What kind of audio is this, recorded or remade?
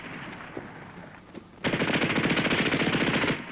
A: recorded